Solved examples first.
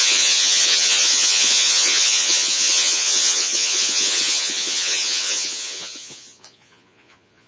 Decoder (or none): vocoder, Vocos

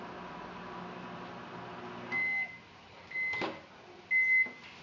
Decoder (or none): none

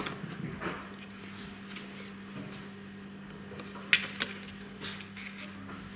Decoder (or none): none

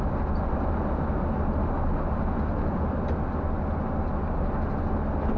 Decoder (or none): none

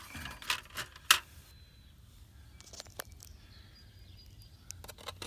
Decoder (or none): none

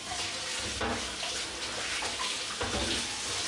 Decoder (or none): none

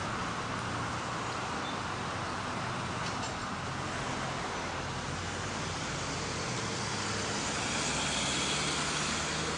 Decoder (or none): none